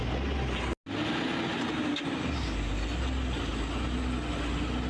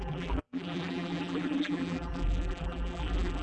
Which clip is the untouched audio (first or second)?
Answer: first